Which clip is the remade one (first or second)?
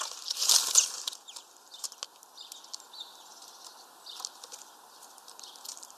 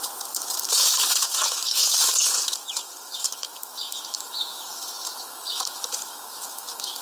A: second